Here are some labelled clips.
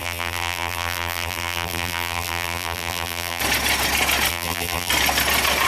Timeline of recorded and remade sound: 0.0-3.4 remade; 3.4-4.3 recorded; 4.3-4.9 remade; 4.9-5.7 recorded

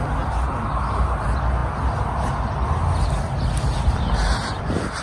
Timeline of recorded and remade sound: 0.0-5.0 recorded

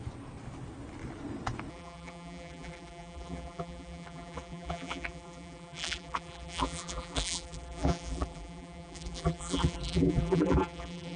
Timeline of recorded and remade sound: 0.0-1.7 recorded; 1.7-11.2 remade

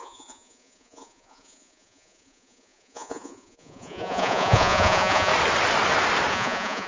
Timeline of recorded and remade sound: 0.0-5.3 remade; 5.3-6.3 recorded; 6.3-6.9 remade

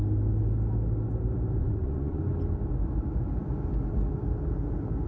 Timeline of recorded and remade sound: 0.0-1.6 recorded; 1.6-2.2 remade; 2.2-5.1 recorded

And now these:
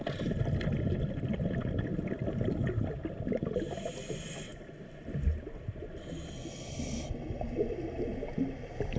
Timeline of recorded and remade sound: 0.0-9.0 recorded